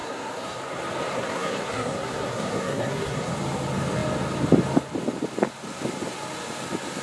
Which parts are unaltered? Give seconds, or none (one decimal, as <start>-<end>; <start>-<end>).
0.6-1.1; 3.3-7.0